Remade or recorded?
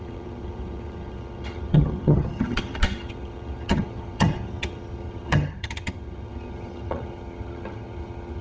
remade